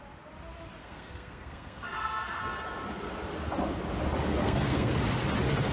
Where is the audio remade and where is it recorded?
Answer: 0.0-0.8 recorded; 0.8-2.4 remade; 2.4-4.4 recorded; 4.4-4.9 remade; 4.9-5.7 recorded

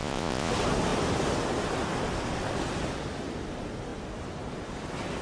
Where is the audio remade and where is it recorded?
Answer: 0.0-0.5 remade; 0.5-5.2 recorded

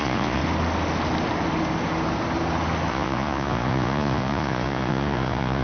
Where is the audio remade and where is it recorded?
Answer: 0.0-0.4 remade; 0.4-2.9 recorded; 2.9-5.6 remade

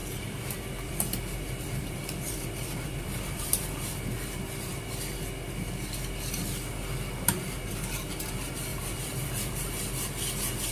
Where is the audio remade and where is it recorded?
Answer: 0.0-3.9 remade; 3.9-8.7 recorded; 8.7-9.7 remade; 9.7-10.7 recorded

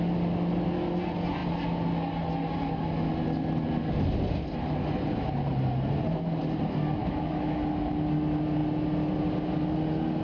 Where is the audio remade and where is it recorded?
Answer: 0.0-7.0 recorded; 7.0-7.6 remade; 7.6-10.2 recorded